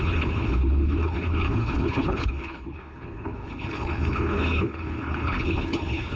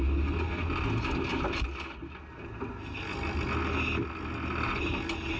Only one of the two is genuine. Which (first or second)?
second